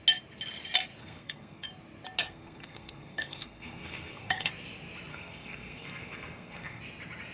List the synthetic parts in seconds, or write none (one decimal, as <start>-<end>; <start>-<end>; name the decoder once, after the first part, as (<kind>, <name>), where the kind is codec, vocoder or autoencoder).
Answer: 1.0-1.7 (codec, SNAC); 2.2-4.5; 5.1-6.8